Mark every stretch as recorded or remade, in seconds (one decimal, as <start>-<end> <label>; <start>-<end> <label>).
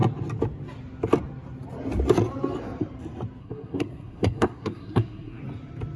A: 0.0-3.4 recorded; 3.4-5.4 remade; 5.4-6.0 recorded